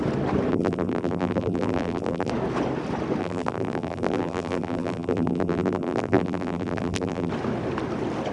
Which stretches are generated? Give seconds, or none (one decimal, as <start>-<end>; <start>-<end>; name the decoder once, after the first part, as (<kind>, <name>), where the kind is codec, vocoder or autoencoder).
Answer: 0.5-2.3 (vocoder, BigVGAN v2); 3.2-7.3

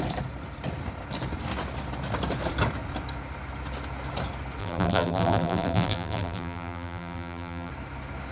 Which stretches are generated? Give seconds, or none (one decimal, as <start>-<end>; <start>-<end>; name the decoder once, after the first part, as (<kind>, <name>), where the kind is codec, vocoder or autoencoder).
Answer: 4.6-7.7 (vocoder, BigVGAN v2)

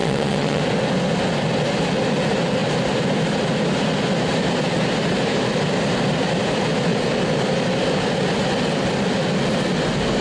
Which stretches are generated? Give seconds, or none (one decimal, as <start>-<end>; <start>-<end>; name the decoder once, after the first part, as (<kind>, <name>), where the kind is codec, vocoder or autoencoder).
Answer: 0.0-0.6 (vocoder, WaveNeXt)

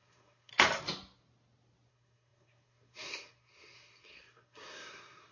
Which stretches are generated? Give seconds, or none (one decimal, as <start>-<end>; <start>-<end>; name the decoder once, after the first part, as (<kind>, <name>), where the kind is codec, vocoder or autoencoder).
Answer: 0.0-0.5 (codec, SNAC); 1.9-5.3

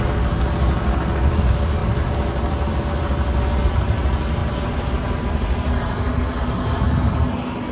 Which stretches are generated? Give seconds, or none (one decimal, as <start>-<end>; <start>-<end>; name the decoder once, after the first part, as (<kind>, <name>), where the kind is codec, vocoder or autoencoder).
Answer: none

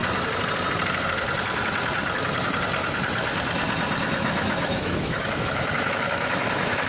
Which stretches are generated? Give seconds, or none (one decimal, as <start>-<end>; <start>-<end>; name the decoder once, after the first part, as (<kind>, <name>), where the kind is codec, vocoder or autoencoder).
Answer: 4.0-6.9 (autoencoder, DAC-VAE)

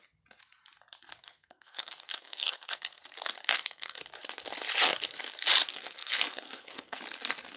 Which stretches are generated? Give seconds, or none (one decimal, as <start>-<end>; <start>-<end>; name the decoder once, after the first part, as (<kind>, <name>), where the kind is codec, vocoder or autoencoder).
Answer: 1.2-3.0 (codec, SNAC); 3.4-4.0; 5.7-7.0

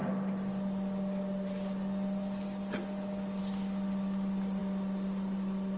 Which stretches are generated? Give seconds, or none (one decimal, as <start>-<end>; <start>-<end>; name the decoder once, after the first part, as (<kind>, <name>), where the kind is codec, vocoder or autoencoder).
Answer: none